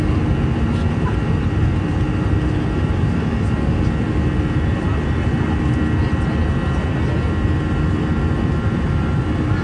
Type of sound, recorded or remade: remade